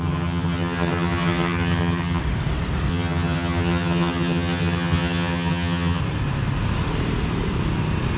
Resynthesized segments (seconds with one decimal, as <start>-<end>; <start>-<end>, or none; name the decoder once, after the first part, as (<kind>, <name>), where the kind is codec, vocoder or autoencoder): 0.0-2.2 (vocoder, HiFi-GAN); 2.9-6.0

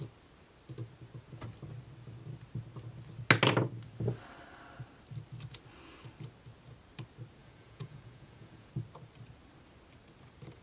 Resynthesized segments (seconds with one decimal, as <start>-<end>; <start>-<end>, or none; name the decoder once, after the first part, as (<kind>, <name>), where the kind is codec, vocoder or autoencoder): 7.4-8.7 (vocoder, Vocos)

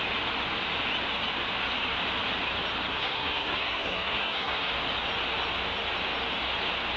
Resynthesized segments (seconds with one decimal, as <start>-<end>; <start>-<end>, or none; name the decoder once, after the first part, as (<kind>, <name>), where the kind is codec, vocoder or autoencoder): 2.9-4.7 (codec, SNAC)

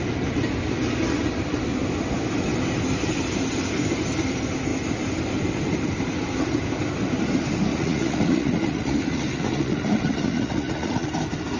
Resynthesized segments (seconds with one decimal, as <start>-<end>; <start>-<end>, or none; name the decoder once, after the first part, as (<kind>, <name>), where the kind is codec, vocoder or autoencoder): 7.7-11.1 (vocoder, Vocos)

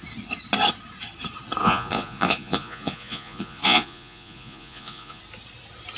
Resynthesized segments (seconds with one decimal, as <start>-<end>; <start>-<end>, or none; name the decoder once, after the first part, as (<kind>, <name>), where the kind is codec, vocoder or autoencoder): 1.6-5.2 (vocoder, Vocos)

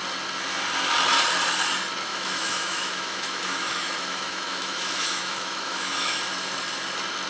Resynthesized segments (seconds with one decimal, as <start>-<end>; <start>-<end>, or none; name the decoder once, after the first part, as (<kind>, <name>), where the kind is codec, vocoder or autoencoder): 2.1-6.2 (autoencoder, DAC-VAE)

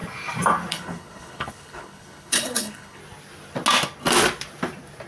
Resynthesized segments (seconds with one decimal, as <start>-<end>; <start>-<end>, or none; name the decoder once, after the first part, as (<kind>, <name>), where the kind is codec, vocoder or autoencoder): 0.7-3.0 (codec, HILCodec)

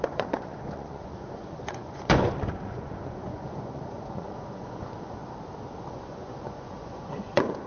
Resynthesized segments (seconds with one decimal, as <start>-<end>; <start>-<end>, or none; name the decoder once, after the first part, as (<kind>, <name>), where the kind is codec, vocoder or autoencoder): 0.0-5.2 (vocoder, Vocos); 5.9-7.7